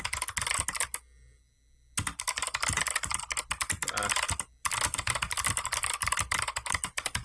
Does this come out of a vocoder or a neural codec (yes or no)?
no